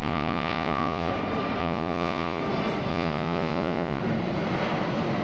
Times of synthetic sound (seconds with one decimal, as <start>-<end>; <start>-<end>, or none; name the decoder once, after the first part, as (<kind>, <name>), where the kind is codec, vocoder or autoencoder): 0.0-1.1 (vocoder, Vocos); 1.6-2.4; 2.9-4.0